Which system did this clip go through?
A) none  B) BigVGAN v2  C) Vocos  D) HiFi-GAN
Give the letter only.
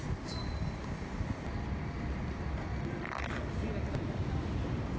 A